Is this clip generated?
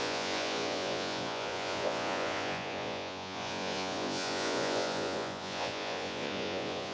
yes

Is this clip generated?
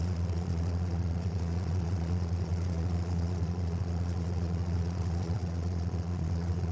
yes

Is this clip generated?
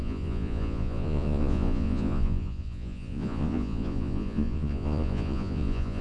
yes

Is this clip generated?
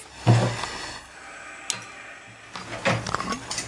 no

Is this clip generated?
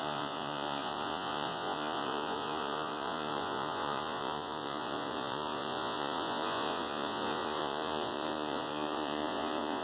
yes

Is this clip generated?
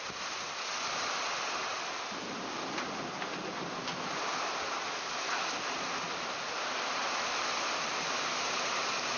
no